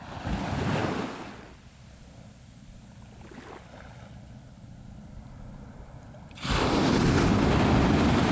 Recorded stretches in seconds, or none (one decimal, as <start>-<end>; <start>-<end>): 0.0-8.3